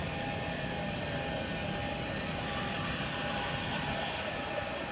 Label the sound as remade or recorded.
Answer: remade